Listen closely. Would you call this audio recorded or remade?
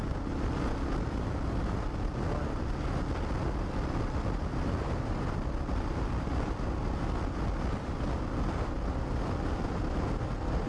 recorded